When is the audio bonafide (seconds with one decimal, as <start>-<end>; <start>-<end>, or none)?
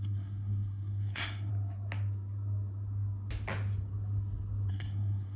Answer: 1.5-4.7